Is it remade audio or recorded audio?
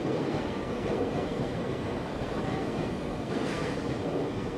remade